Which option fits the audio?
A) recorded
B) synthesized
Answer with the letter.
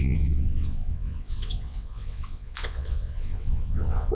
B